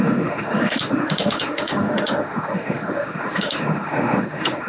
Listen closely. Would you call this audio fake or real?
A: fake